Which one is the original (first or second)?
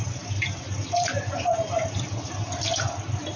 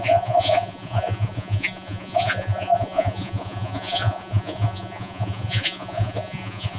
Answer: first